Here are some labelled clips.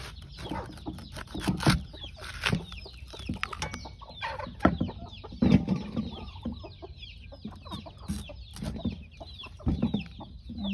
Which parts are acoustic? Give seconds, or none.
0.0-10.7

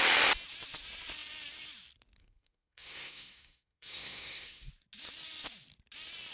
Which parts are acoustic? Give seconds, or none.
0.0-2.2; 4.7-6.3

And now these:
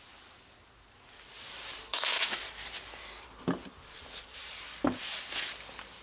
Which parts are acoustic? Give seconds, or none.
0.0-1.9; 2.4-6.0

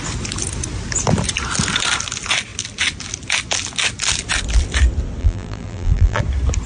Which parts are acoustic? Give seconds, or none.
0.0-5.2; 6.2-6.7

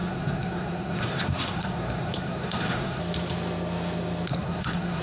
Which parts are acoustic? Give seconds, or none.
3.0-4.3

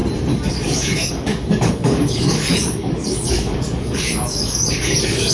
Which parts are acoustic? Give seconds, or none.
0.0-0.5

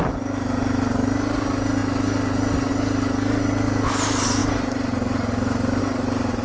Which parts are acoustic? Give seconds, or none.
0.0-6.4

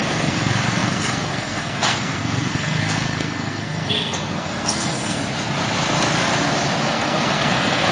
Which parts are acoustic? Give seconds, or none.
5.2-6.8